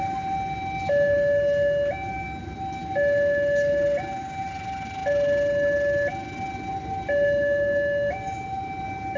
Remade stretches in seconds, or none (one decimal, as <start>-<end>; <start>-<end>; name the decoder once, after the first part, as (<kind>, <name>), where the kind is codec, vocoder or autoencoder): none